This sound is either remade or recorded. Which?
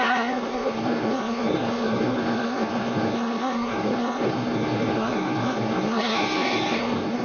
remade